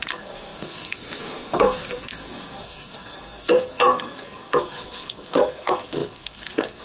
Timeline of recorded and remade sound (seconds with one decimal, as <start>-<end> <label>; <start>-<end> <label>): 0.0-6.8 remade